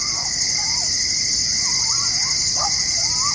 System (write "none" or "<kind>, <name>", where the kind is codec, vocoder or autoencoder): none